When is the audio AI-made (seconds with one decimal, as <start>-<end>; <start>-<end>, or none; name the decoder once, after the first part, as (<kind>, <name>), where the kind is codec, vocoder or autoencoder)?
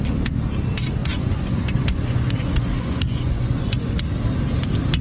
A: 1.0-4.0 (vocoder, Vocos)